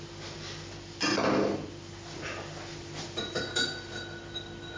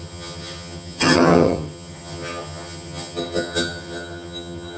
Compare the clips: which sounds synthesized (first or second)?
second